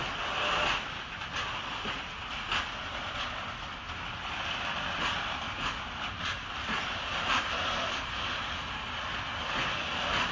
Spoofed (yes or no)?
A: no